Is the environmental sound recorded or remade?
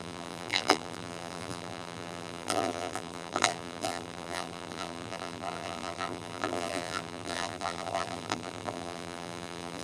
remade